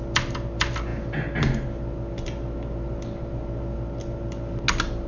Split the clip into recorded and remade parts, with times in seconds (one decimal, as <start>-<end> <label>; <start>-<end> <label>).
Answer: 0.0-5.1 recorded